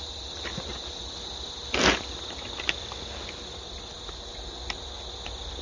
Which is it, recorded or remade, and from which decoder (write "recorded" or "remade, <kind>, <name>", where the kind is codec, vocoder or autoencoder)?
recorded